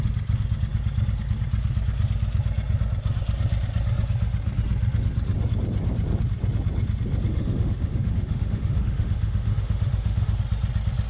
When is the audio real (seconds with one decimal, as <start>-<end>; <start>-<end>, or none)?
0.0-7.3; 10.4-11.1